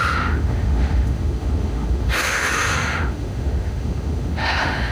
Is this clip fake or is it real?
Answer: fake